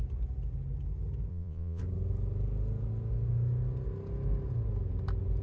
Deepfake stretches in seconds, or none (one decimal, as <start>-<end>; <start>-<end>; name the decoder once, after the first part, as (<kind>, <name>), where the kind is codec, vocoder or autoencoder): 1.3-1.8 (vocoder, Vocos)